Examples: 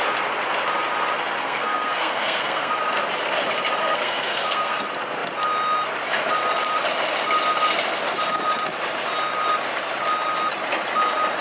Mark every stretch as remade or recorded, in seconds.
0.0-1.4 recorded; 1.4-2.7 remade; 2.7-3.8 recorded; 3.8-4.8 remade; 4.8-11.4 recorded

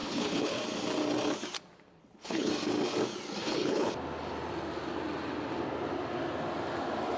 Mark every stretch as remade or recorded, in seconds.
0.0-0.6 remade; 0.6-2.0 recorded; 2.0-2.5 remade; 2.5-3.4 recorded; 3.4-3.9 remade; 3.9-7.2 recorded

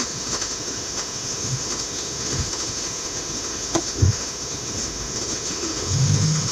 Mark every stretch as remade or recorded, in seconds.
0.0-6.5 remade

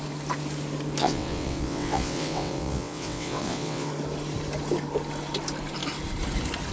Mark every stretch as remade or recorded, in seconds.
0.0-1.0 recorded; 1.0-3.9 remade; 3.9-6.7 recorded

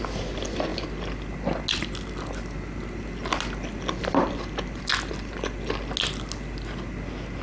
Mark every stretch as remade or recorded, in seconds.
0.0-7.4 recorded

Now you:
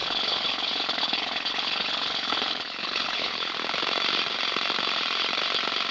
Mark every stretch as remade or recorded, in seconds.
0.0-3.5 remade; 3.5-5.9 recorded

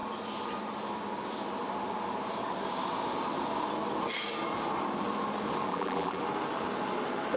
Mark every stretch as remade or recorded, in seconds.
0.0-5.7 recorded; 5.7-6.2 remade; 6.2-7.4 recorded

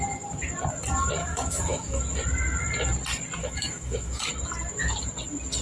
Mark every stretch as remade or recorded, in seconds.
0.0-1.2 recorded; 1.2-2.0 remade; 2.0-3.4 recorded; 3.4-4.3 remade; 4.3-5.6 recorded